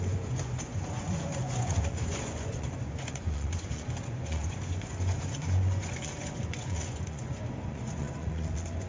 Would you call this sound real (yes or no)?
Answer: no